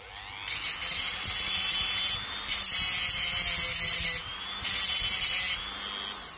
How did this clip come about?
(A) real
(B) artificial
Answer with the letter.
A